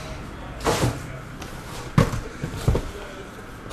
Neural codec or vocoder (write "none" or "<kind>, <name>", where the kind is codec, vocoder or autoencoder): vocoder, BigVGAN v2